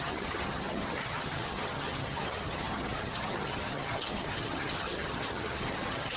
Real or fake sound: fake